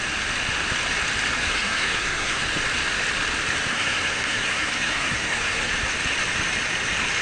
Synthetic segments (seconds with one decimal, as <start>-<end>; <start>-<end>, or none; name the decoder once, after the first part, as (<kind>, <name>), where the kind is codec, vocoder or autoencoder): 1.4-2.4 (codec, SNAC); 3.7-5.7